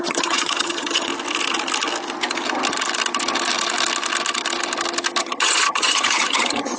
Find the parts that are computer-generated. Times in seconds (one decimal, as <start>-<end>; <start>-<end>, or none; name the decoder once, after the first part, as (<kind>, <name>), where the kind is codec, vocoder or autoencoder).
0.0-1.1 (vocoder, HiFi-GAN); 5.2-6.8